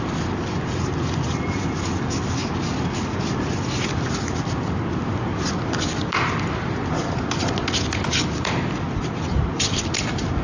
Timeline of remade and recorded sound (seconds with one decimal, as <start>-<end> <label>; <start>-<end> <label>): 0.0-10.4 recorded